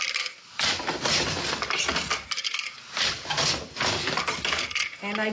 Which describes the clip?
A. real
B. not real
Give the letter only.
A